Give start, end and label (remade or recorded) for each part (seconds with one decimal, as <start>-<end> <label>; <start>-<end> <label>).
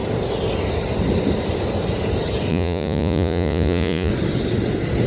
0.0-2.5 recorded; 2.5-4.1 remade; 4.1-5.1 recorded